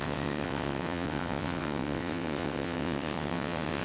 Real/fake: fake